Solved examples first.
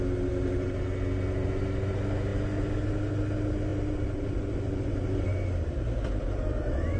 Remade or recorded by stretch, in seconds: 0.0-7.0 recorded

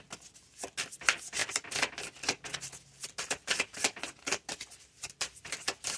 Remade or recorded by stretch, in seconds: 0.0-6.0 recorded

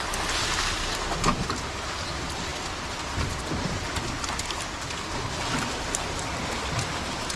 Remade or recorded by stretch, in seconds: 0.0-7.4 recorded